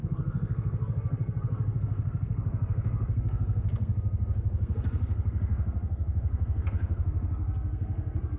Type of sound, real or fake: fake